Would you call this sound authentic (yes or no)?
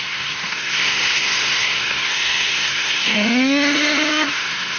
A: no